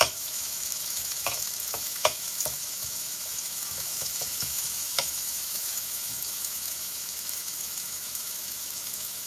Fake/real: fake